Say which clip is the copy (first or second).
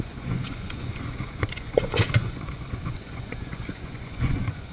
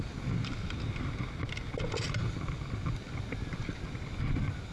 first